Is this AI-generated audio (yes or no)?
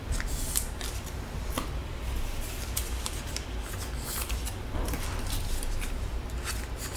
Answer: yes